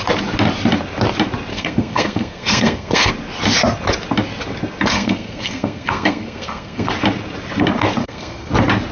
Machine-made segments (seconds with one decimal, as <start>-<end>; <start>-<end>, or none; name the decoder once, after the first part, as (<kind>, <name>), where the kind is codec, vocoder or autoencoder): 1.5-3.1 (codec, SNAC); 4.9-6.9; 8.0-8.5